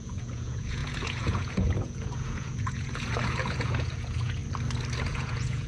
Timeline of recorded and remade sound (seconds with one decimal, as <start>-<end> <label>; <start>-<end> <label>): 0.0-4.4 remade; 4.4-5.0 recorded; 5.0-5.7 remade